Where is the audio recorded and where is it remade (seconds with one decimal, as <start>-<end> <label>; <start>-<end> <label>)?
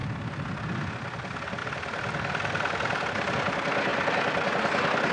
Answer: 0.0-5.1 recorded